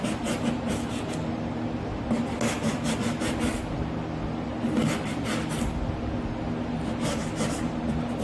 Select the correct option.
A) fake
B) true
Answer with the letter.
B